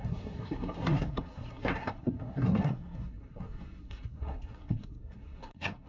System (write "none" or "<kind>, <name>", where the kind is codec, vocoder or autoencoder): codec, SNAC